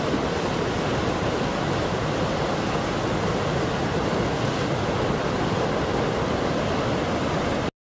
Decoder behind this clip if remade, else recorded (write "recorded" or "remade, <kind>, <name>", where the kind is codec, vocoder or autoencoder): recorded